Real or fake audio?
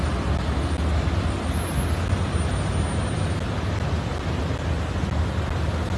real